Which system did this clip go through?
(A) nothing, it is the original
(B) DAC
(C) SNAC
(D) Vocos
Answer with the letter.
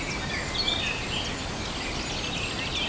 A